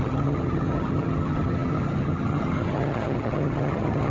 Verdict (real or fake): fake